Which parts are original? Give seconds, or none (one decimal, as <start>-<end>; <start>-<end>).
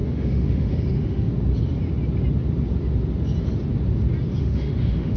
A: 1.3-4.4